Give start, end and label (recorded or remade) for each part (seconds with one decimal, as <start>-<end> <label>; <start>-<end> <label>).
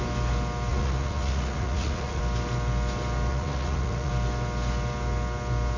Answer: 0.0-0.7 recorded; 0.7-2.2 remade; 2.2-3.3 recorded; 3.3-4.1 remade; 4.1-5.8 recorded